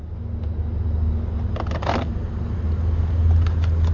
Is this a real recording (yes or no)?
yes